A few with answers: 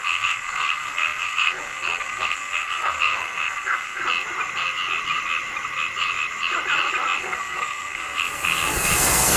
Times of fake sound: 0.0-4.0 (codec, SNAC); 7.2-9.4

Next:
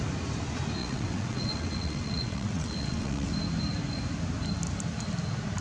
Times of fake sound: 0.8-3.3 (vocoder, WaveNeXt)